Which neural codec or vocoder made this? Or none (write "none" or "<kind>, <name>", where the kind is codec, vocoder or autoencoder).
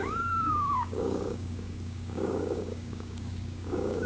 codec, DAC